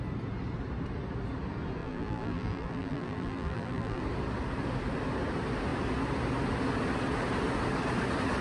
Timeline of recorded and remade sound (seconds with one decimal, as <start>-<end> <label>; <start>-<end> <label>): 0.0-1.8 recorded; 1.8-4.0 remade; 4.0-8.4 recorded